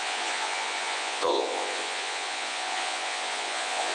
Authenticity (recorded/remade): remade